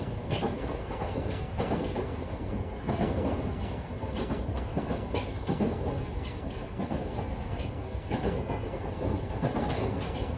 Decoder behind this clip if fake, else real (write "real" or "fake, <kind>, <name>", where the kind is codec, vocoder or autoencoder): fake, codec, SNAC